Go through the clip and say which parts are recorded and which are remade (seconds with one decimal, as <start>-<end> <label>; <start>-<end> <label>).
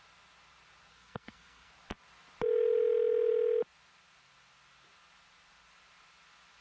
0.0-0.9 recorded; 0.9-1.7 remade; 1.7-6.6 recorded